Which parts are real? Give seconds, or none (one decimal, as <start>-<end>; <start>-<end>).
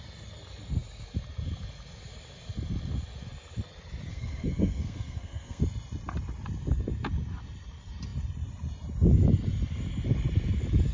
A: 0.0-4.1; 5.6-10.9